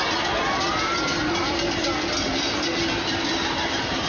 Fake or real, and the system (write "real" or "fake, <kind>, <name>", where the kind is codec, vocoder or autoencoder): real